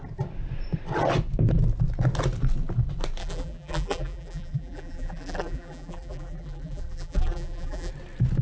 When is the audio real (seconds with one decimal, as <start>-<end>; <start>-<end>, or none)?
0.0-3.2; 7.9-8.4